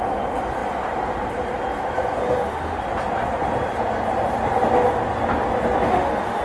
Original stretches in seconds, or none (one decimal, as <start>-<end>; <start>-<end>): 0.0-2.2; 2.8-5.9